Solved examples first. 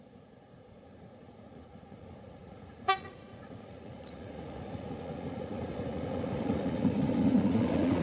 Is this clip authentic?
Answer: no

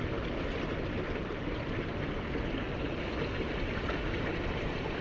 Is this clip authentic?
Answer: yes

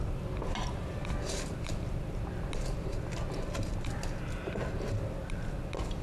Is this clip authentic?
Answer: yes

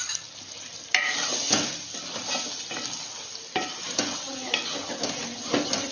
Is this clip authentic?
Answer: yes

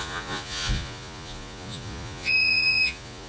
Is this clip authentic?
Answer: no